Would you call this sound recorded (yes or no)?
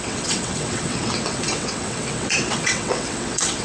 no